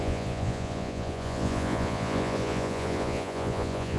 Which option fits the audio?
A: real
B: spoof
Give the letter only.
B